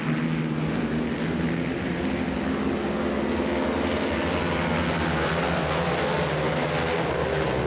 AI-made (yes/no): no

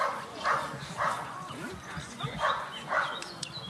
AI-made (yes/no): yes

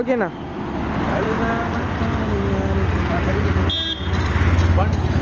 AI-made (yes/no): no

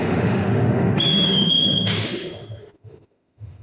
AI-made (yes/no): yes